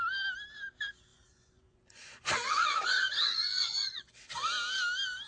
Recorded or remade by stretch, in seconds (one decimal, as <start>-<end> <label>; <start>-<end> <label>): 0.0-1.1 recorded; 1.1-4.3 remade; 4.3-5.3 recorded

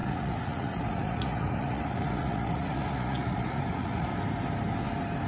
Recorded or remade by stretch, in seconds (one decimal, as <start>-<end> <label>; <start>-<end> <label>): 0.0-4.1 remade; 4.1-5.3 recorded

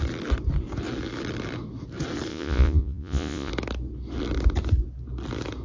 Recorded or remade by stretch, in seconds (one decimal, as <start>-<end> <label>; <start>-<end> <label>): 0.0-2.3 recorded; 2.3-3.5 remade; 3.5-5.6 recorded